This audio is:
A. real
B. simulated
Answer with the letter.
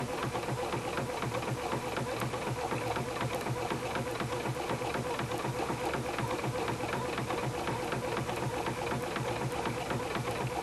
A